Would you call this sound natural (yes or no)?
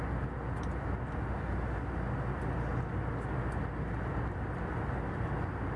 yes